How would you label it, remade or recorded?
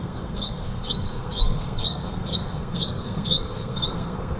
remade